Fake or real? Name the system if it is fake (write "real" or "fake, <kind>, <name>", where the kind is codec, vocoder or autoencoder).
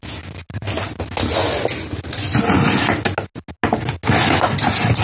real